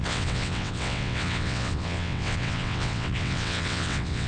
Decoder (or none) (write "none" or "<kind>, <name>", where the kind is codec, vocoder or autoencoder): vocoder, WaveNeXt